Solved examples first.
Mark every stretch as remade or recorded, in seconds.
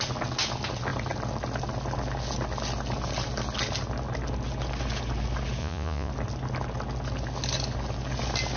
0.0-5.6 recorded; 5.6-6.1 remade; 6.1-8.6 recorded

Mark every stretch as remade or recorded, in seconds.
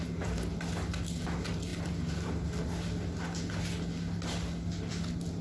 0.0-5.4 recorded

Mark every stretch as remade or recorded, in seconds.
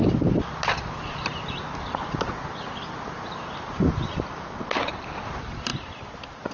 0.0-6.5 recorded